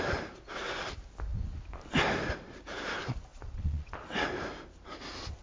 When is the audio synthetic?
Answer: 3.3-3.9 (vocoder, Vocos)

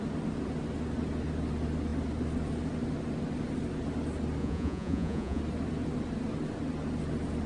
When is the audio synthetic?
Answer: 4.4-5.4 (vocoder, Vocos)

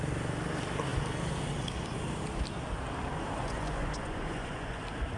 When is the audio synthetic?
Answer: 3.4-4.8 (vocoder, Vocos)

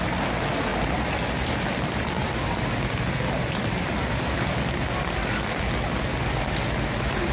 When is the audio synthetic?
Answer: none